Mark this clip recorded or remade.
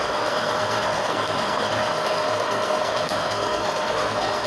remade